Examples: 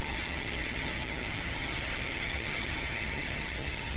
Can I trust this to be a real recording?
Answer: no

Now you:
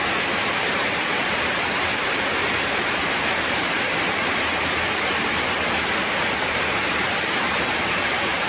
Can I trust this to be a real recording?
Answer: no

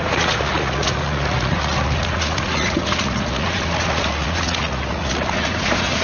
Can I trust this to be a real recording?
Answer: no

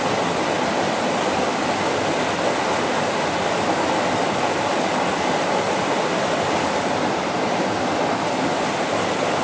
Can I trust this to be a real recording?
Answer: yes